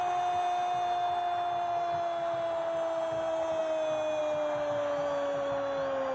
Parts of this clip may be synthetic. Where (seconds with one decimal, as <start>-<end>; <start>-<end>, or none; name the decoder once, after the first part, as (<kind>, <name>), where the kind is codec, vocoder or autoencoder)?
none